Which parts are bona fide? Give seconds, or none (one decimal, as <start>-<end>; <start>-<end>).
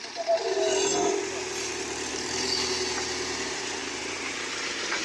0.0-2.1; 2.7-5.0